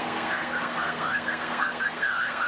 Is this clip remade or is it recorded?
remade